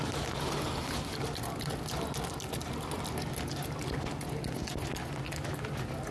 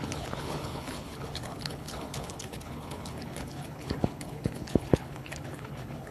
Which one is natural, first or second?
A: first